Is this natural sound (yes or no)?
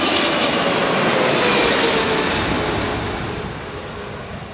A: yes